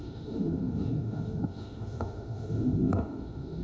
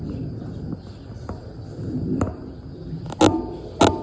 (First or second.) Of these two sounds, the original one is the second